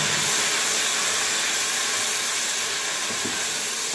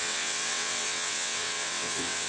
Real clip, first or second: first